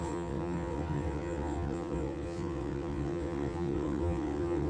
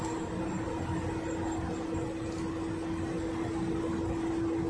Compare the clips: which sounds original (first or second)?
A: second